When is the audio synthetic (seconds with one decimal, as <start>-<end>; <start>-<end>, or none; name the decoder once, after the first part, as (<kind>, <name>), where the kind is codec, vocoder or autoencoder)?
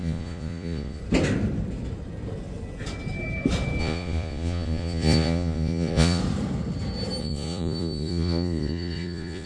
0.0-1.0 (vocoder, Vocos); 3.8-6.2; 7.2-9.5